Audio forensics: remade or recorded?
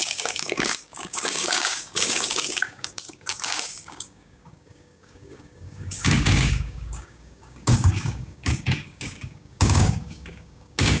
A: remade